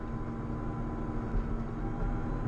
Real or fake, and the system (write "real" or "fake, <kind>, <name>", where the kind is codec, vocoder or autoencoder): real